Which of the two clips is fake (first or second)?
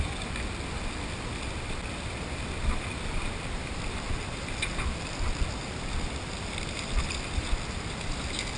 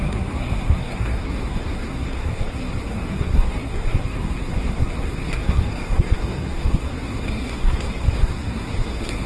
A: second